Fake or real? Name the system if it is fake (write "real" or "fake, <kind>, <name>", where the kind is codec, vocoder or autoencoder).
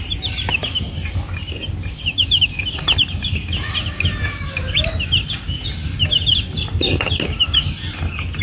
real